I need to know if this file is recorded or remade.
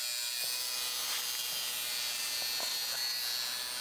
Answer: recorded